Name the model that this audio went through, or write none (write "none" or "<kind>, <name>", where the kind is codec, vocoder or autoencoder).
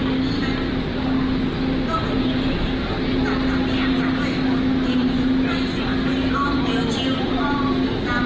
none